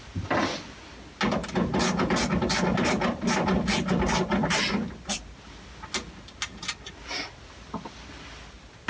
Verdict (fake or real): real